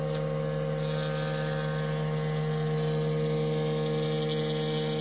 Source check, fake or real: real